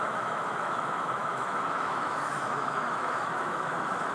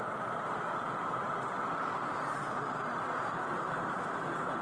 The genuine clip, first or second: second